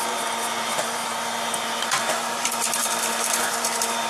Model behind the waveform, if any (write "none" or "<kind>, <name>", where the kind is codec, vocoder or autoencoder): vocoder, BigVGAN v2